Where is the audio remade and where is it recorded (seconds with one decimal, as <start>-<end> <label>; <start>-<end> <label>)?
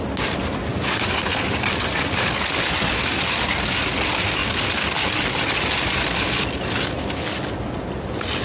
0.0-8.4 recorded